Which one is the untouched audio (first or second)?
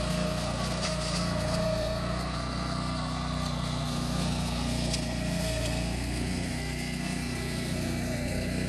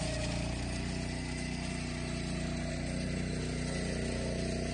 second